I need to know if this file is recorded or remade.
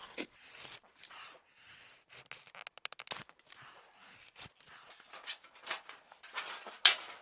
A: recorded